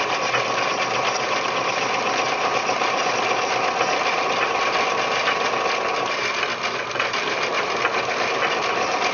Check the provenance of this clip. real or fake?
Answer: real